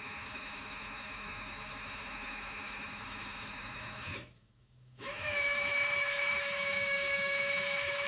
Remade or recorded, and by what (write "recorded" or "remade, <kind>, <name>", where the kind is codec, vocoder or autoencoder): remade, autoencoder, DAC-VAE